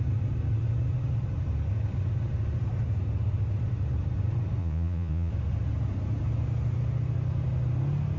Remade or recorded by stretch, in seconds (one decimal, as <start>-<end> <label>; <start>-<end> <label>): 0.0-4.6 recorded; 4.6-5.3 remade; 5.3-8.2 recorded